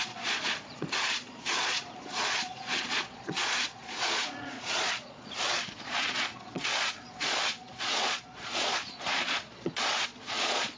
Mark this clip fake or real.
fake